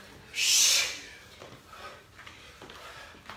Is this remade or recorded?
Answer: recorded